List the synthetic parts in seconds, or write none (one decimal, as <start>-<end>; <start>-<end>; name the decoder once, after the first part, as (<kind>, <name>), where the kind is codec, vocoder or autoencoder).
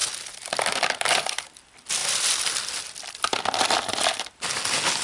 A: 0.0-1.4 (vocoder, BigVGAN v2); 2.0-4.3